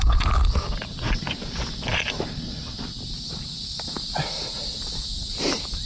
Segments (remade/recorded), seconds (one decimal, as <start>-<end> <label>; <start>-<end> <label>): 0.0-5.9 recorded